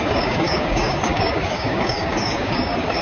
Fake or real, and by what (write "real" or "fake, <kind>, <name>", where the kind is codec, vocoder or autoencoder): fake, codec, DAC